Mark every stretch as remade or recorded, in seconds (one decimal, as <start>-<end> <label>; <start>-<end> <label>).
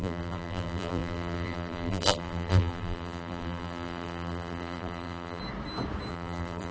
0.0-5.4 remade; 5.4-6.1 recorded; 6.1-6.7 remade